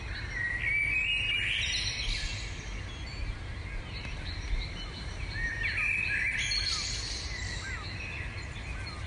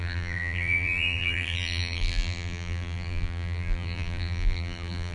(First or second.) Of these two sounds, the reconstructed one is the second